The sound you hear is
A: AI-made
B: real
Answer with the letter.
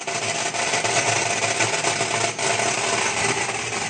B